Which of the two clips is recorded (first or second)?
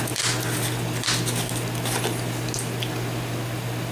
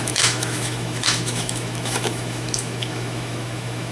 first